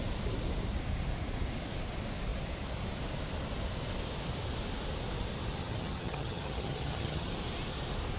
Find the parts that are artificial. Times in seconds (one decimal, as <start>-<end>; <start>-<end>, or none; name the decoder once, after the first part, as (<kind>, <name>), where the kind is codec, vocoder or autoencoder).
5.6-7.3 (vocoder, HiFi-GAN)